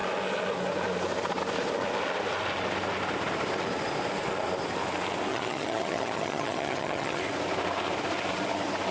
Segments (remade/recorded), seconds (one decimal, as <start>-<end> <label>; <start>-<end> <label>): 0.0-5.3 recorded; 5.3-7.2 remade; 7.2-8.9 recorded